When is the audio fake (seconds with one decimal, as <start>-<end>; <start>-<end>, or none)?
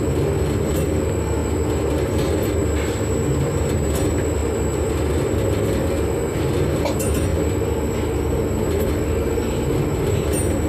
none